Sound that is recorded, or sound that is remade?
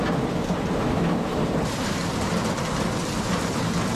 recorded